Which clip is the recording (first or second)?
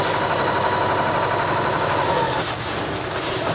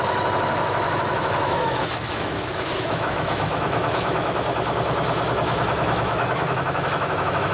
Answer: first